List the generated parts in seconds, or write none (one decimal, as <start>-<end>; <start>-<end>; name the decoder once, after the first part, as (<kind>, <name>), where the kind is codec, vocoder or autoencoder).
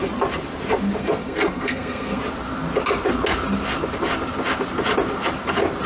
1.0-2.2 (codec, SNAC)